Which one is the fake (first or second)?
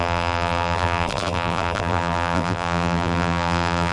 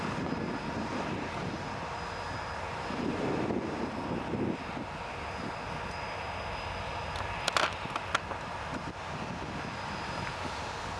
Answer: first